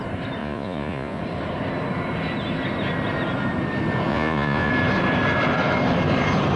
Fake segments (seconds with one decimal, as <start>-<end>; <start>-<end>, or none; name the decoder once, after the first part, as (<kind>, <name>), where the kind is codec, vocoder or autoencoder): 0.4-1.2 (vocoder, Vocos); 4.1-4.7